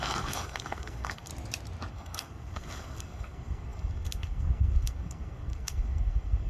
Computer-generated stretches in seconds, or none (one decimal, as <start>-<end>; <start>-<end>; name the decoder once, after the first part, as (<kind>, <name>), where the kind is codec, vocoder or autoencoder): 0.0-1.3 (codec, SNAC); 1.9-6.5

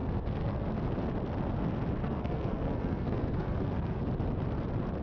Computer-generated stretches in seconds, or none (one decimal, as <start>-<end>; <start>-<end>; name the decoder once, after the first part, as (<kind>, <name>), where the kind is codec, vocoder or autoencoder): 0.0-0.7 (codec, SNAC); 2.0-4.0

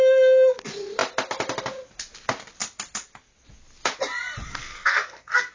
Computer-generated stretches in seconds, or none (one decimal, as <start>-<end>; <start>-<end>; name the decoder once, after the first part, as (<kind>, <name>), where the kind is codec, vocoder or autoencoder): 4.6-5.5 (codec, SNAC)